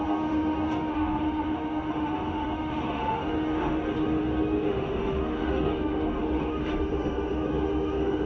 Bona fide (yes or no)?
no